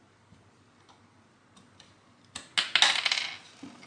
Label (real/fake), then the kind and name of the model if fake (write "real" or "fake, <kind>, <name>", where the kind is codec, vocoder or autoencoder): real